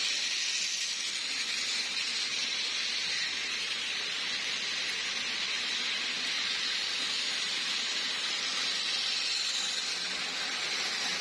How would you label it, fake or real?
real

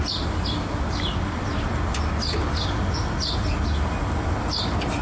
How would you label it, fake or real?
real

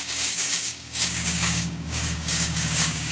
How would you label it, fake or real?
fake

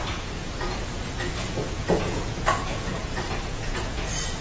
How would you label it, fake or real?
fake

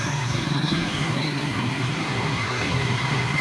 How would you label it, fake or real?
fake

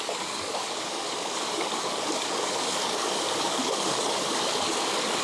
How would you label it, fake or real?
fake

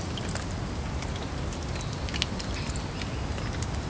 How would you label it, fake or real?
real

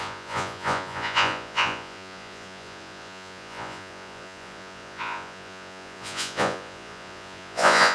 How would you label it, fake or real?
fake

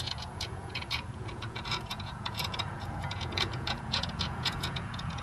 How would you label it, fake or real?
fake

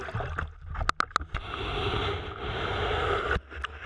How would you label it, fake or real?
real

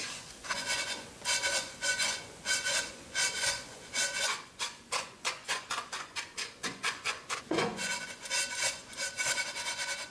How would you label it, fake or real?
fake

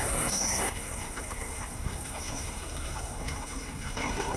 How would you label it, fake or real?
fake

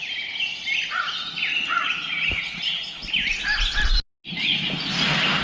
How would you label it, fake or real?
real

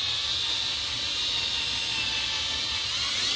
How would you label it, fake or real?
real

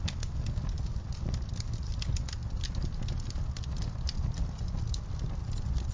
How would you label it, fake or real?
real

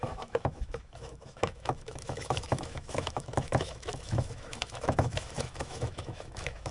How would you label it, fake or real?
fake